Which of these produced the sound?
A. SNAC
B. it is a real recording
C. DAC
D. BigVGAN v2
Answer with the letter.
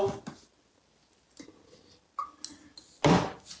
B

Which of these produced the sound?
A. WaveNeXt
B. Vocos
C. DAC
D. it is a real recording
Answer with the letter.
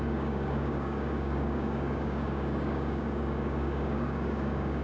C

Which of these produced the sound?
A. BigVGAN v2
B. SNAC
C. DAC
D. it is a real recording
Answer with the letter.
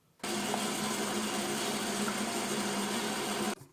D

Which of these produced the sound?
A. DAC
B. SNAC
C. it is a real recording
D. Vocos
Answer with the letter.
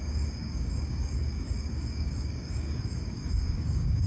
A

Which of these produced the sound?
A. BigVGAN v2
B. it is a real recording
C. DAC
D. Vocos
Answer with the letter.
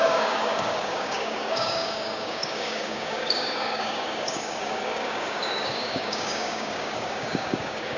C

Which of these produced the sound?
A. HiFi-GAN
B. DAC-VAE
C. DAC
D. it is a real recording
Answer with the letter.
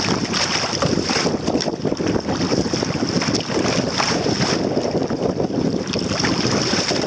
D